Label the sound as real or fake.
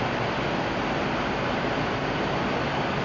real